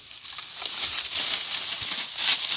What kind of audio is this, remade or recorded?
recorded